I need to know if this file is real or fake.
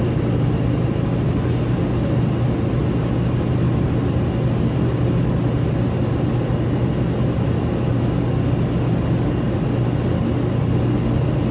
real